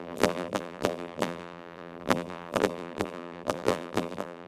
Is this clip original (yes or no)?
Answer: no